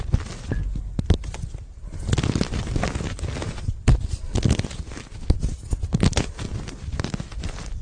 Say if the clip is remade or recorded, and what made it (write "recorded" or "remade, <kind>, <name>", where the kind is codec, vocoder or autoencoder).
recorded